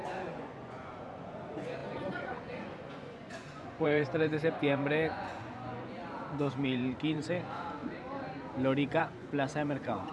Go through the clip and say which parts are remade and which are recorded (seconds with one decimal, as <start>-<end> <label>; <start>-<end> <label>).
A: 0.0-7.8 remade; 7.8-9.0 recorded; 9.0-10.1 remade